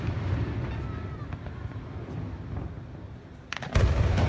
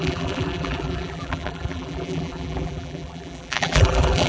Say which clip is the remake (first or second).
second